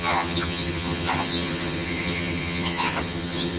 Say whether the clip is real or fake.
fake